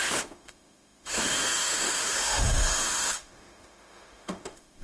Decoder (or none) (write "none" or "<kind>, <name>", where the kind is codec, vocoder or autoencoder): autoencoder, DAC-VAE